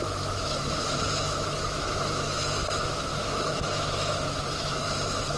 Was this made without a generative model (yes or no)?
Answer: no